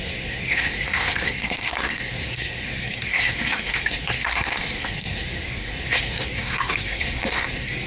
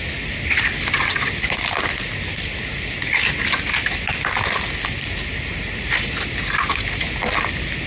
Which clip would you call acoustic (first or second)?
second